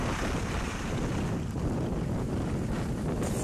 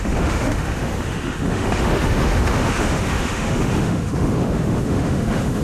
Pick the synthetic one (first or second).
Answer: second